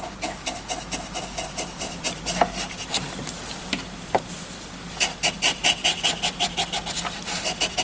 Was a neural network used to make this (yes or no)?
no